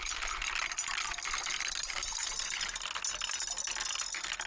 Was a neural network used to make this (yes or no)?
no